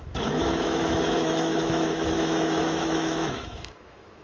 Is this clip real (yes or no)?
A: no